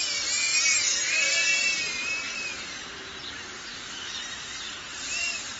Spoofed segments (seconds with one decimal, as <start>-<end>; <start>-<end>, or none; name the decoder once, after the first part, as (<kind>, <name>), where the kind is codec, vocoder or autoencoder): 0.5-3.9 (vocoder, BigVGAN v2); 4.9-5.6